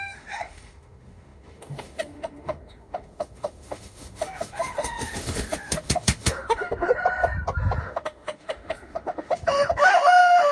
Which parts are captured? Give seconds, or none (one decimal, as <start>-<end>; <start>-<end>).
6.9-7.8